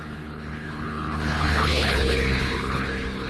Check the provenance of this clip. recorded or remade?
remade